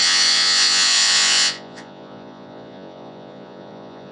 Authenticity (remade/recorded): remade